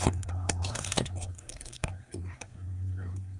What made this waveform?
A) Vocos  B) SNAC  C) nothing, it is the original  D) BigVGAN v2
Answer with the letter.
B